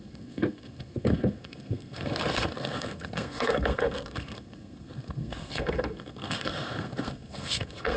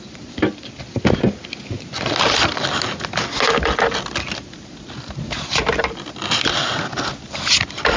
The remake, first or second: first